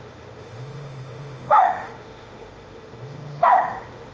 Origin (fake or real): fake